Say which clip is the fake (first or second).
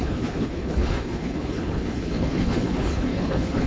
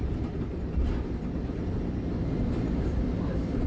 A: first